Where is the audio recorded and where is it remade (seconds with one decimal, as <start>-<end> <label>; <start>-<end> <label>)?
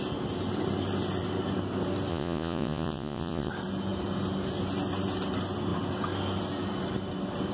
0.0-2.1 recorded; 2.1-3.5 remade; 3.5-7.5 recorded